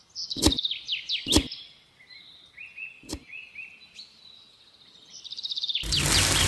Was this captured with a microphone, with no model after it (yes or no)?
yes